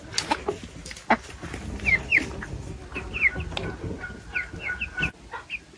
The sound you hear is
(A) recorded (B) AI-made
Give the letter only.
A